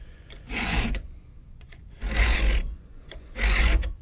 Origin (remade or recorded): remade